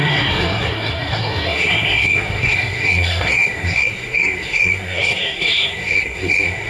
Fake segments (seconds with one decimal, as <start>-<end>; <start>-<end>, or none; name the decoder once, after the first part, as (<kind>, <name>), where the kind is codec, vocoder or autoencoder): 0.0-6.7 (codec, SNAC)

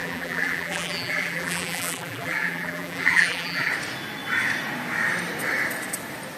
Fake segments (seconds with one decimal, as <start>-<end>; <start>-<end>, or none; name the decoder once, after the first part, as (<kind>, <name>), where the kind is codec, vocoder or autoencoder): 0.0-3.7 (vocoder, BigVGAN v2)